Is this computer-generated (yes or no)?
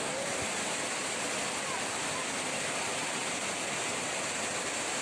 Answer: no